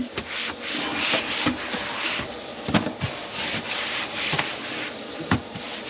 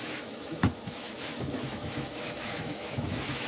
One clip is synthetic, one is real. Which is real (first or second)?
first